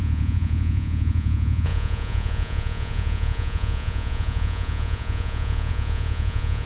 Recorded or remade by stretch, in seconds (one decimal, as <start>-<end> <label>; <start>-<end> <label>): 0.0-6.7 remade